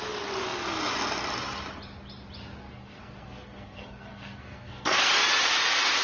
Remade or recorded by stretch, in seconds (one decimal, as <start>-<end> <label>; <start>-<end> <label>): 0.0-2.6 recorded; 2.6-5.1 remade; 5.1-6.0 recorded